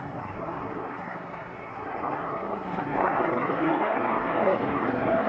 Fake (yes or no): yes